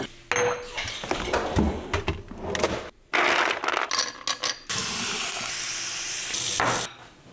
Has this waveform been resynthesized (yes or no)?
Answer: no